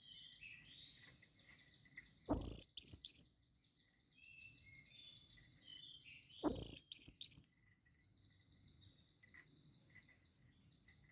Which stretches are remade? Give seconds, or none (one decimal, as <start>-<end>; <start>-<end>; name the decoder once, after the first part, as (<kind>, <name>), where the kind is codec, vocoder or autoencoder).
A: 3.0-4.3 (vocoder, Vocos)